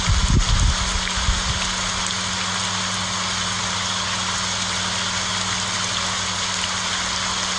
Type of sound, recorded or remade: recorded